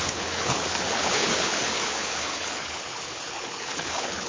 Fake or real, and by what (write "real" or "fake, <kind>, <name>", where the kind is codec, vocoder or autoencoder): fake, codec, HILCodec